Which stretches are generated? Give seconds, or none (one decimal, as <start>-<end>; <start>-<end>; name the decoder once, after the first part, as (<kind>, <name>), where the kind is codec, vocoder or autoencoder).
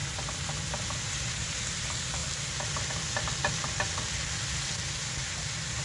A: 1.1-2.2 (vocoder, BigVGAN v2)